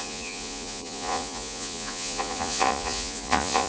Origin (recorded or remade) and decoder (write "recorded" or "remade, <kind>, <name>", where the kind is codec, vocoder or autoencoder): remade, vocoder, Vocos